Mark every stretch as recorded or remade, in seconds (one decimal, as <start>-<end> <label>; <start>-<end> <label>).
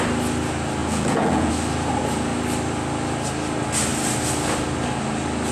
0.0-0.8 recorded; 0.8-1.5 remade; 1.5-5.5 recorded